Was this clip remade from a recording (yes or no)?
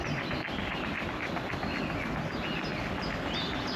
no